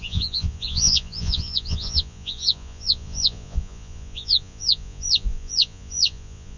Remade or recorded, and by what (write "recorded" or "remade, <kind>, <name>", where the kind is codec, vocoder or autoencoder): remade, vocoder, Vocos